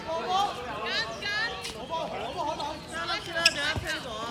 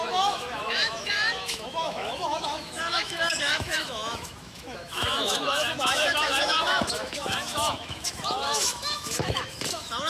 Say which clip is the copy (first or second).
second